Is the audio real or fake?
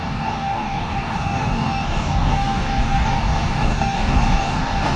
fake